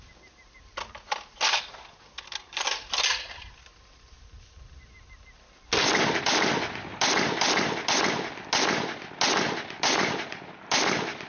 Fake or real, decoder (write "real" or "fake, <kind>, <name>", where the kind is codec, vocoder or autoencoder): real